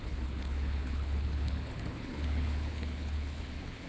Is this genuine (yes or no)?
no